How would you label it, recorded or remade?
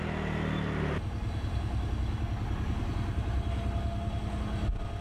recorded